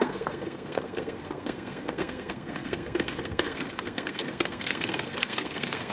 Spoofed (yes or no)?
yes